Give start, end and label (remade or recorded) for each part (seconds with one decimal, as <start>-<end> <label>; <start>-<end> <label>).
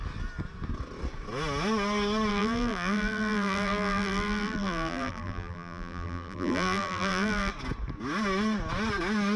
0.0-2.3 recorded; 2.3-7.5 remade; 7.5-9.4 recorded